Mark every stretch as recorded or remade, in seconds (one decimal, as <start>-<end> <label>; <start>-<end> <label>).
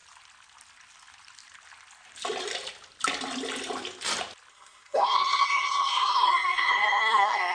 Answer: 0.0-4.5 recorded; 4.5-7.5 remade